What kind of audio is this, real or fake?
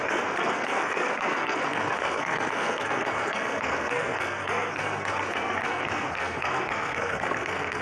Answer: fake